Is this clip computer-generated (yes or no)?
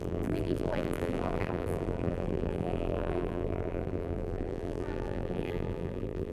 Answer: yes